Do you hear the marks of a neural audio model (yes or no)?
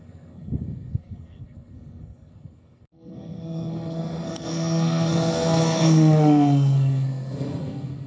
yes